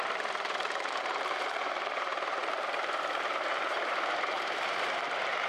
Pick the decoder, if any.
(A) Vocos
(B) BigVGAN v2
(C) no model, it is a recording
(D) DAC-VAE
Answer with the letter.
B